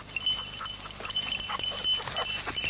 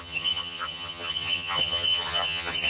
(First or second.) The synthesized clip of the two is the second